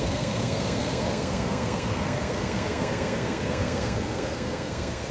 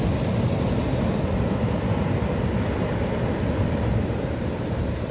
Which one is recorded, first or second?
second